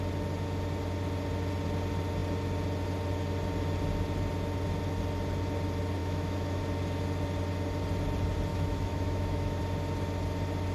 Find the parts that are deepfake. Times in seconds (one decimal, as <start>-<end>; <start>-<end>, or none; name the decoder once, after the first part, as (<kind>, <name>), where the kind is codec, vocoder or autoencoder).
6.0-6.6 (autoencoder, DAC-VAE); 8.5-9.6